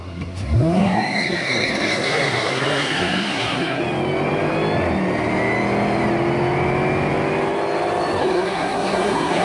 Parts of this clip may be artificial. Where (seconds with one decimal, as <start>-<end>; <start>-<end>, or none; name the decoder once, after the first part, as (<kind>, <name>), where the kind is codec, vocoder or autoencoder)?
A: 0.0-3.8 (codec, SNAC); 8.2-9.4